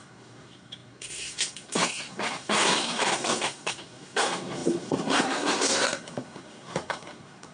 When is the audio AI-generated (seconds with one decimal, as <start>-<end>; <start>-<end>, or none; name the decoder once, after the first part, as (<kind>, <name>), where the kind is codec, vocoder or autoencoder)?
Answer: 0.0-7.5 (codec, SNAC)